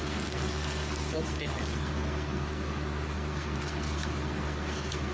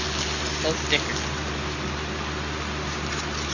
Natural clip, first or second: second